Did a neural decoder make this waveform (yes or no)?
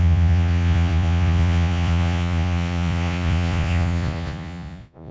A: yes